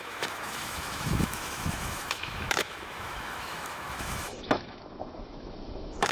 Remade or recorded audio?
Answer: remade